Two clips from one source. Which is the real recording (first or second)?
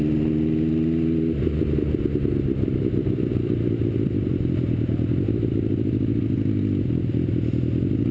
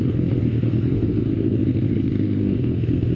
first